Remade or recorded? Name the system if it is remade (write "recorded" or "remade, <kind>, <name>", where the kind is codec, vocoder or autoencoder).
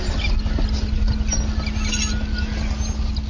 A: recorded